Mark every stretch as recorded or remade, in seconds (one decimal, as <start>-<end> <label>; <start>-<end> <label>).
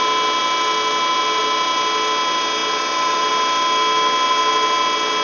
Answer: 0.0-5.2 recorded